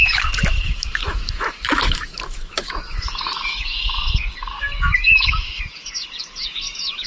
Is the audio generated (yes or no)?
yes